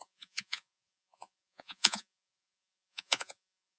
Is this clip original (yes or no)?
no